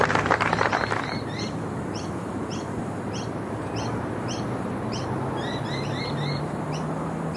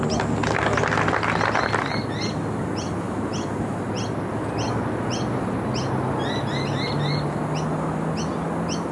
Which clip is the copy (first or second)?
first